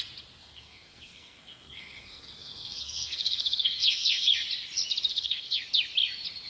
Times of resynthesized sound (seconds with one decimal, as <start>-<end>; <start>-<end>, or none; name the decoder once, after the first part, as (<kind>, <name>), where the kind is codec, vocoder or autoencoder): 0.4-4.3 (codec, SNAC); 5.1-5.6